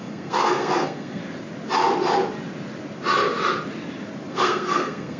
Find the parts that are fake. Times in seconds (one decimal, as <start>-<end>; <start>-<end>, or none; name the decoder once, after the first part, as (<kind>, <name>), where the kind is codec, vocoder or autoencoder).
0.0-1.2 (codec, SNAC); 4.3-5.2